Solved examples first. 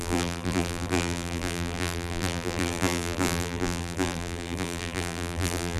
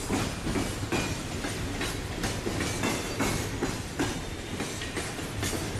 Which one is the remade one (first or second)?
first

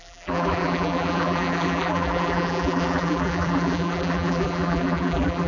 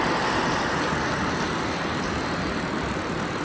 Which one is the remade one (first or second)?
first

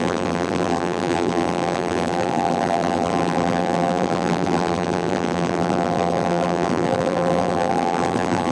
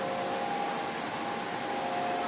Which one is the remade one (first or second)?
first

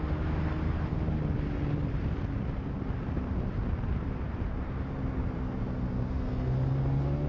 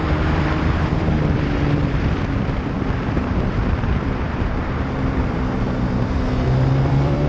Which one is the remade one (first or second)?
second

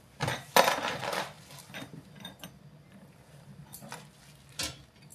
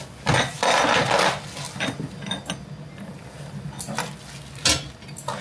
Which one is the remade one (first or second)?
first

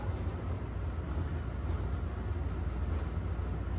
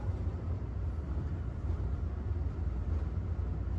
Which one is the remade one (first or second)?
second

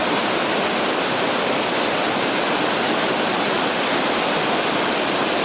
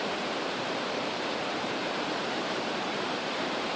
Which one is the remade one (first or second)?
second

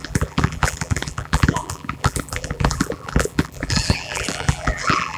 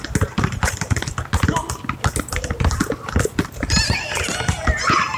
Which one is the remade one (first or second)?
first